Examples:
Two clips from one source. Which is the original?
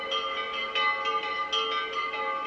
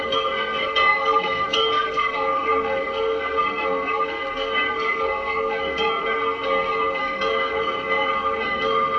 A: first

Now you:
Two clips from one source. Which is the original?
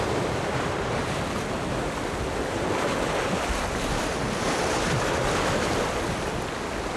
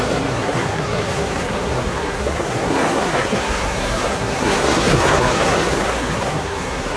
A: first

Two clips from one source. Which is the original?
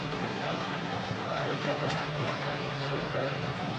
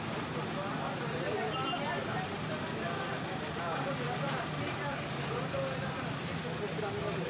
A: second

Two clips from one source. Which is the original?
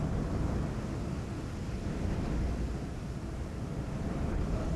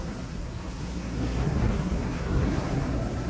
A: first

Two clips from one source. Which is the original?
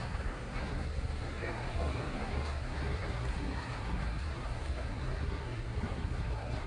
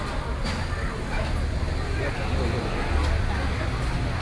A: second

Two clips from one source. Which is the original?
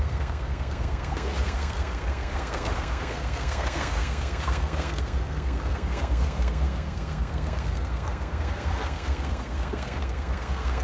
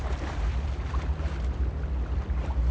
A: second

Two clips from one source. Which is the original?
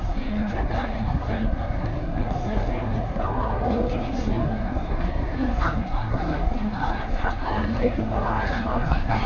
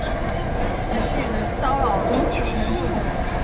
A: second